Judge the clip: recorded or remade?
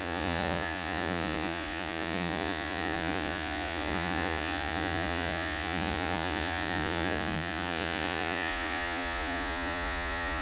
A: remade